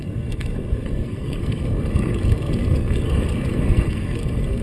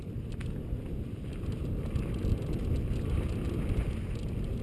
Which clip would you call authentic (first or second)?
second